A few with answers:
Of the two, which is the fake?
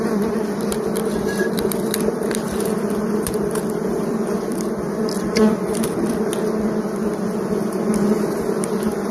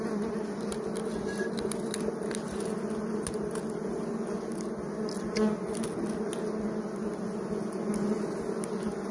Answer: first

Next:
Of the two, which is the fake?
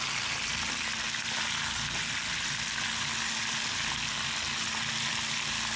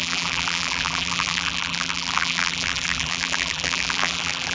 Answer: second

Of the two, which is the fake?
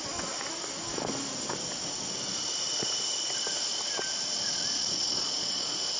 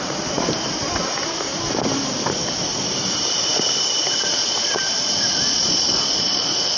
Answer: second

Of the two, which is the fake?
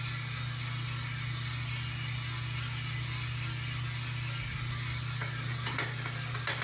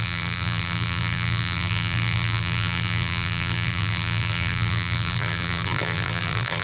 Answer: second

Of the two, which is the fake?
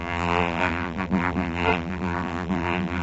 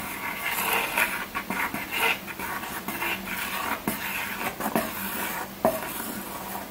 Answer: first